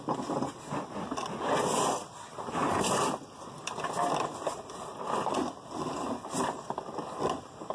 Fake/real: real